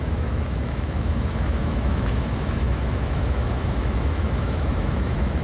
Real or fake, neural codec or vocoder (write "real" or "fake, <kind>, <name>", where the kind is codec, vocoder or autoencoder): fake, autoencoder, DAC-VAE